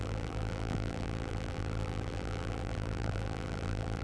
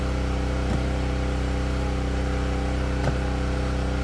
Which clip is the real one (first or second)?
second